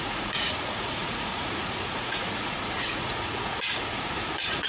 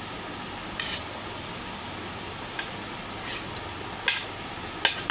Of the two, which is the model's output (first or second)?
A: first